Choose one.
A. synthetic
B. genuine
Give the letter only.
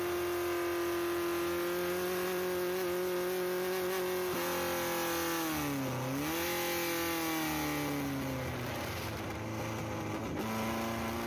B